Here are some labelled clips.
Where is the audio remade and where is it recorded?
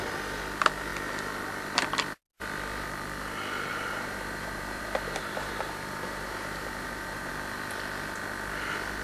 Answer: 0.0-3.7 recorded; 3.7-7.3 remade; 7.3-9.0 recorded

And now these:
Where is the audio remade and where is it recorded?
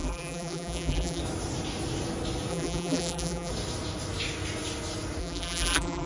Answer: 0.0-1.2 remade; 1.2-2.5 recorded; 2.5-3.5 remade; 3.5-5.2 recorded; 5.2-6.1 remade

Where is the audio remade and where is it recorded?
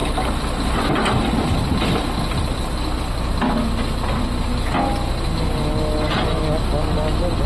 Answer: 0.0-7.5 recorded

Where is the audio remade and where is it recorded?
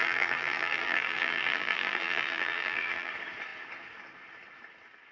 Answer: 0.0-3.1 remade; 3.1-5.1 recorded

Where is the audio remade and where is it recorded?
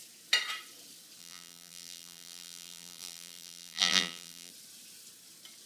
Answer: 0.0-1.2 recorded; 1.2-4.5 remade; 4.5-5.7 recorded